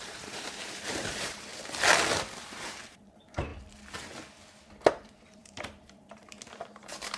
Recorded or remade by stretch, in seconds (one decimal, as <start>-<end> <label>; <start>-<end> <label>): 0.0-1.5 remade; 1.5-2.4 recorded; 2.4-3.5 remade; 3.5-4.9 recorded; 4.9-7.2 remade